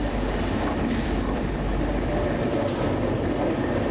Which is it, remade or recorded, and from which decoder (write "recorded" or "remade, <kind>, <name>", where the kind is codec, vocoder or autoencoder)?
remade, vocoder, BigVGAN v2